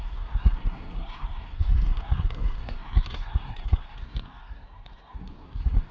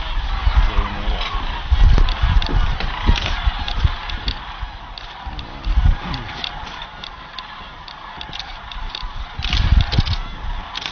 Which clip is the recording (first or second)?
second